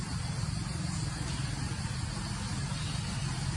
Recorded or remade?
recorded